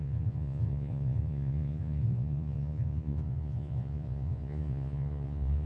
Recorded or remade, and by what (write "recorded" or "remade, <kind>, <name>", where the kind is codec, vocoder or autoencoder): remade, vocoder, Vocos